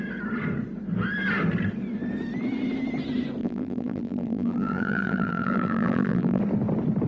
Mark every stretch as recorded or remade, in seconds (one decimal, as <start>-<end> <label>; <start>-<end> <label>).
0.0-3.4 recorded; 3.4-6.4 remade; 6.4-7.1 recorded